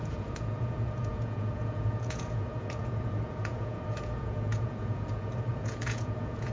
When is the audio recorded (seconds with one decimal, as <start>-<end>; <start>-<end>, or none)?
none